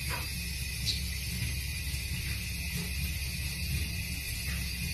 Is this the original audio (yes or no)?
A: yes